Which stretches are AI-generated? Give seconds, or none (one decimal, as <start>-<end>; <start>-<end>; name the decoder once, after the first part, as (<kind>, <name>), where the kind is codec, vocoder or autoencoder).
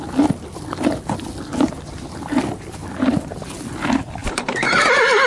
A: 4.2-4.8 (vocoder, BigVGAN v2)